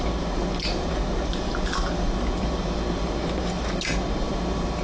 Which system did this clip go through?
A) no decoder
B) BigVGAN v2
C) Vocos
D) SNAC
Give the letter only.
B